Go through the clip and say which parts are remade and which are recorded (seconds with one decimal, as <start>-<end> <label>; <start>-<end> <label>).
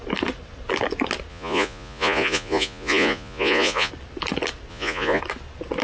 0.0-1.3 recorded; 1.3-3.9 remade; 3.9-4.7 recorded; 4.7-5.2 remade; 5.2-5.8 recorded